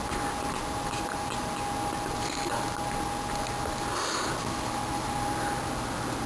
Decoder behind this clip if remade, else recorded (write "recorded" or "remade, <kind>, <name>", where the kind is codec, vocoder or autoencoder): recorded